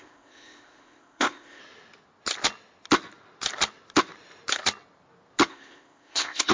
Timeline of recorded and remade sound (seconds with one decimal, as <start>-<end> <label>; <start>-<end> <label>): 0.0-1.6 remade; 1.6-5.5 recorded; 5.5-6.5 remade